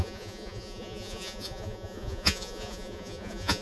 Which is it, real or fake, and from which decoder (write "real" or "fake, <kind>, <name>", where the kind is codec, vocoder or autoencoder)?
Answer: fake, vocoder, Vocos